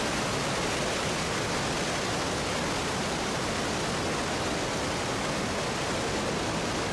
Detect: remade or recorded recorded